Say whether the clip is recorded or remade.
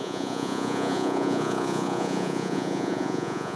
remade